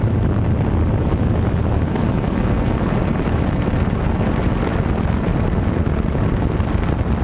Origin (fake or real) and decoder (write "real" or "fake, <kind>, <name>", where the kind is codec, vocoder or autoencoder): real